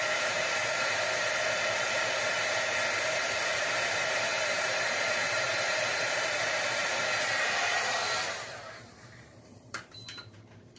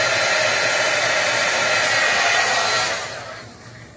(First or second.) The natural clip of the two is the second